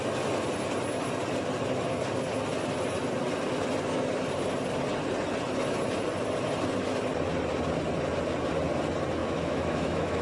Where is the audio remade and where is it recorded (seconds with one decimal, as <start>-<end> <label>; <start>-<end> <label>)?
0.0-9.2 recorded; 9.2-10.2 remade